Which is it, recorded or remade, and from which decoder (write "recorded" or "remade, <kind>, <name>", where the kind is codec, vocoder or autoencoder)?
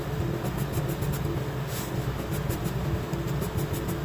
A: recorded